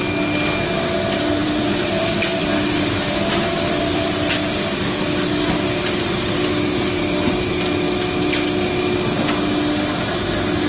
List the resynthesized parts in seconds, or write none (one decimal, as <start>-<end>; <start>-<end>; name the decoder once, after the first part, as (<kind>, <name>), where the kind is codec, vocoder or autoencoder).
1.4-4.1 (vocoder, BigVGAN v2)